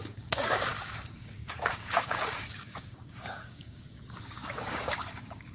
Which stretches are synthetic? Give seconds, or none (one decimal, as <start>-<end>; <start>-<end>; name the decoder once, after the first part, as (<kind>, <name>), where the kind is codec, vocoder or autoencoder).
0.0-5.5 (codec, DAC)